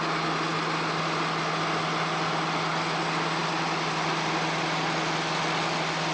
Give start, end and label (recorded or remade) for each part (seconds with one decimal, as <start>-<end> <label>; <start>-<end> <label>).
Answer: 0.0-6.1 recorded